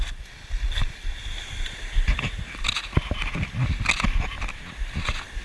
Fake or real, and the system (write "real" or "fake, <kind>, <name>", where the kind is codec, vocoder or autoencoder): real